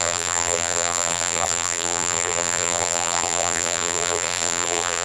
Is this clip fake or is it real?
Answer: fake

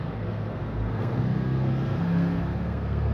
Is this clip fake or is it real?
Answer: fake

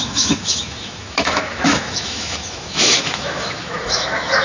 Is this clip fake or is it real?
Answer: fake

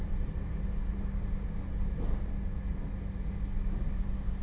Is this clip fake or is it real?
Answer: real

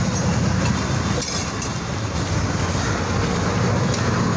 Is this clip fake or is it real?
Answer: real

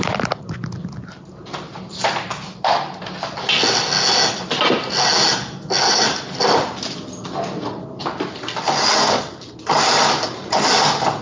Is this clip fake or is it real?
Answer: real